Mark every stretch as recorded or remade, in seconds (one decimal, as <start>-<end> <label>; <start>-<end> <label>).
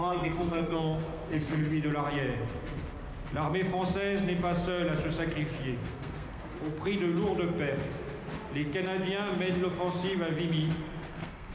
0.0-1.6 remade; 1.6-5.8 recorded; 5.8-6.5 remade; 6.5-11.1 recorded; 11.1-11.5 remade